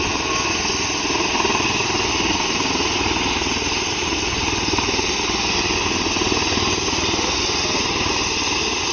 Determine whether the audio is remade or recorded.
recorded